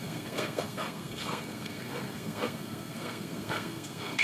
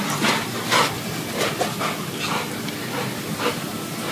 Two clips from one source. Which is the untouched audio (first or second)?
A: second